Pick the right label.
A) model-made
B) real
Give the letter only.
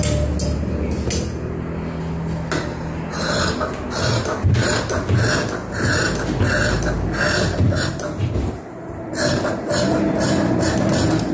B